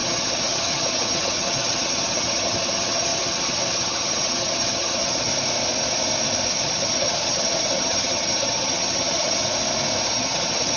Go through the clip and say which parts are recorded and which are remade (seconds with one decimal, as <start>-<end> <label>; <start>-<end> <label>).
0.0-5.3 remade; 5.3-6.5 recorded; 6.5-9.4 remade; 9.4-10.1 recorded; 10.1-10.8 remade